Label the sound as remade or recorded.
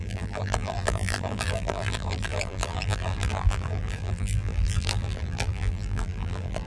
remade